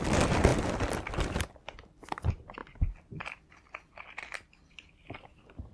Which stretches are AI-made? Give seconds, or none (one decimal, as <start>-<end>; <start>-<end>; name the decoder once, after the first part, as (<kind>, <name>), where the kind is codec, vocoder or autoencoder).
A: none